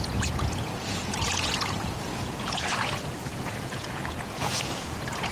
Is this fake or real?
fake